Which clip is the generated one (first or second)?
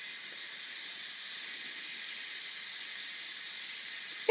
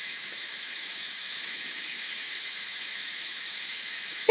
second